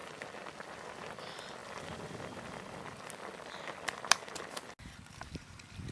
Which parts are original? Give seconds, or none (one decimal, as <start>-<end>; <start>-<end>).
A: 0.0-5.9